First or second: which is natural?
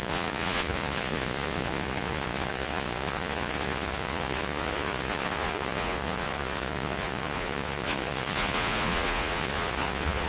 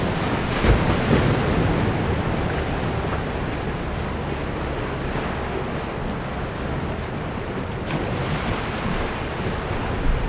second